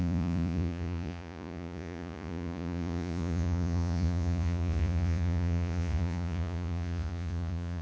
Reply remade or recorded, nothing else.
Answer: remade